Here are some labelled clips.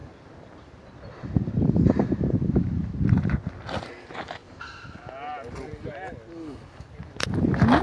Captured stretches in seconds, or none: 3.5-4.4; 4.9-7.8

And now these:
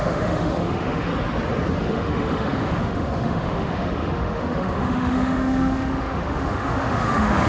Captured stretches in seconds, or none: 1.1-1.8

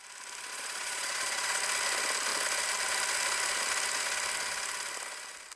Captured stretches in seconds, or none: 0.0-0.5; 1.6-5.6

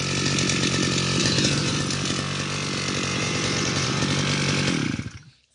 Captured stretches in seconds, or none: 0.0-1.2; 1.8-3.1; 4.0-5.5

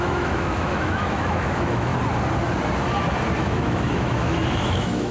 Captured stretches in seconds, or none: 1.9-3.4

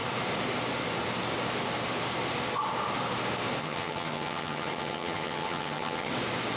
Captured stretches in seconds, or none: 0.0-3.6; 6.1-6.6